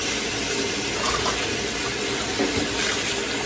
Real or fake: real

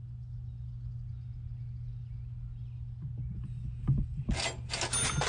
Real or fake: real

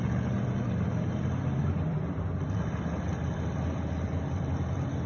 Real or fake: real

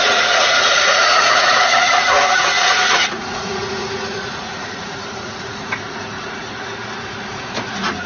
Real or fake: fake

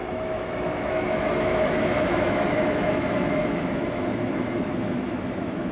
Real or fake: fake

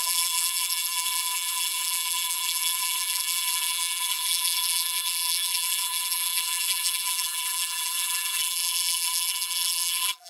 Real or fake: fake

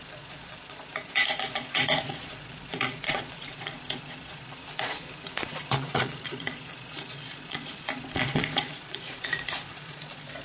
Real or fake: fake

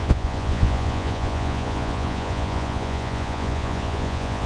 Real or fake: fake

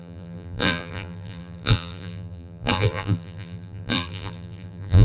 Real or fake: fake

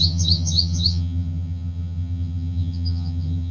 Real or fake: fake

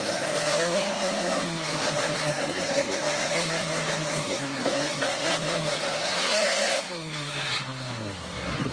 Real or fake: fake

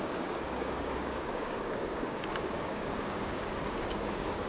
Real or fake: fake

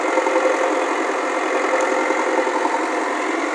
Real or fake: real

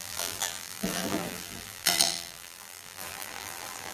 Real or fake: fake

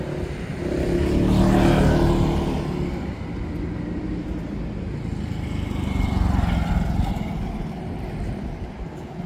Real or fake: real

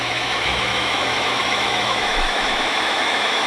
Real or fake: fake